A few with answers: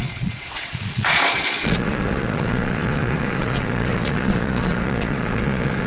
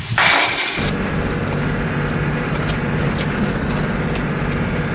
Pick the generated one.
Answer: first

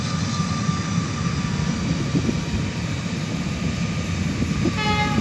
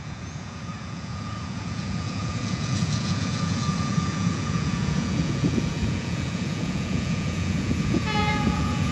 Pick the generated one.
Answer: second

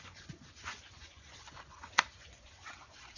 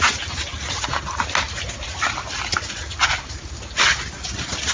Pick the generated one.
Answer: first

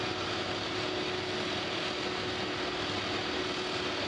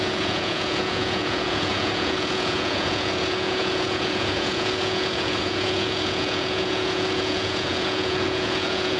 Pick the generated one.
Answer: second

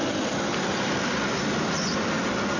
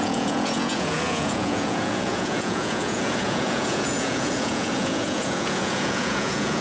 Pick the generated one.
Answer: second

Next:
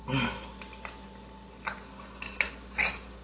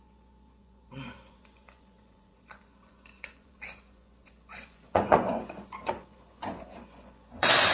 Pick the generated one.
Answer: second